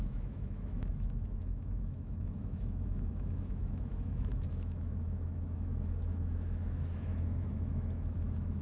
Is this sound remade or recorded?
remade